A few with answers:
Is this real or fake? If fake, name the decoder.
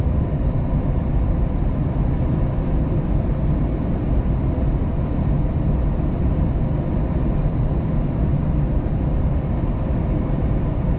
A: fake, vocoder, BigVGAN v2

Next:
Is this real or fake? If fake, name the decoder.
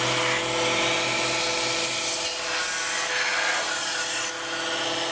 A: real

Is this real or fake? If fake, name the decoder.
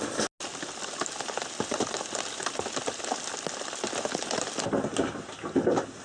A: real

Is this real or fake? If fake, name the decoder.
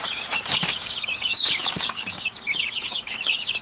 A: fake, codec, DAC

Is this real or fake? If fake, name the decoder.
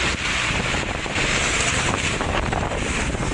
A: fake, vocoder, BigVGAN v2